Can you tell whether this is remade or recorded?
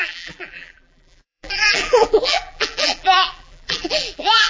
remade